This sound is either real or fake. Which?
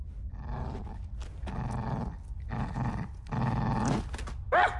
real